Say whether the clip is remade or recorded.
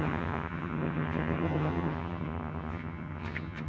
remade